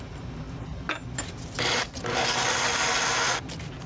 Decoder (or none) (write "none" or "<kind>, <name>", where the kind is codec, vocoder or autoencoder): none